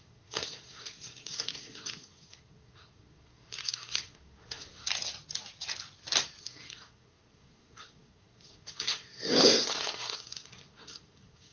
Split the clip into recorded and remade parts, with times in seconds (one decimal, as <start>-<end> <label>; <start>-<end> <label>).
0.0-4.8 remade; 4.8-6.4 recorded; 6.4-11.5 remade